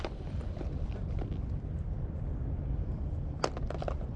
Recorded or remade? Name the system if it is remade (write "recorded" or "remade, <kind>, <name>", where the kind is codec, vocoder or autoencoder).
remade, vocoder, BigVGAN v2